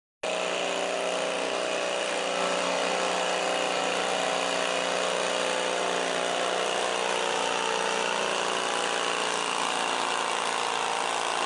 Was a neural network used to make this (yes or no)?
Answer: no